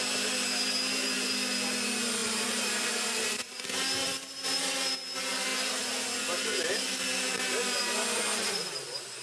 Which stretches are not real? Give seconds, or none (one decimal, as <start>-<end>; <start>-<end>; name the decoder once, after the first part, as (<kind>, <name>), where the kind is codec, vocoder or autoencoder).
2.2-3.6 (vocoder, BigVGAN v2)